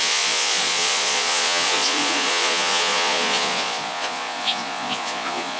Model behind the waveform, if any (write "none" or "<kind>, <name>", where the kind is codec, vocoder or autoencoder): vocoder, Vocos